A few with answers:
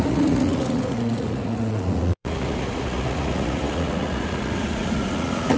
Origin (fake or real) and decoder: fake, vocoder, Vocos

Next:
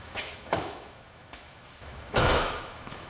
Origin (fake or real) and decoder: fake, autoencoder, DAC-VAE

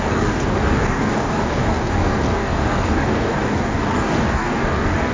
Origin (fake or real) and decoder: fake, codec, DAC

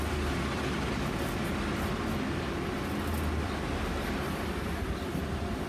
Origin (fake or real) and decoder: real